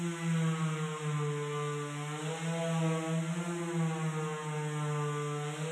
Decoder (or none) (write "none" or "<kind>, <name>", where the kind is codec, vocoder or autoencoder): none